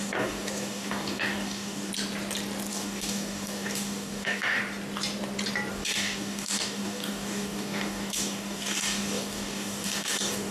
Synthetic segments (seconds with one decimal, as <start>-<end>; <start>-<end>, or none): 0.0-1.9; 2.7-4.6; 5.7-10.5